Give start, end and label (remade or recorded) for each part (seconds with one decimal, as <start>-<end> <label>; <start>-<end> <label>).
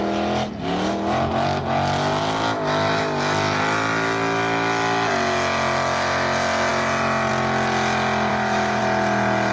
0.0-8.3 recorded; 8.3-8.8 remade; 8.8-9.5 recorded